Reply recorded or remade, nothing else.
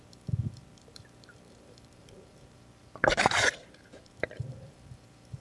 remade